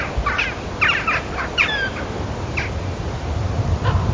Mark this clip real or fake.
real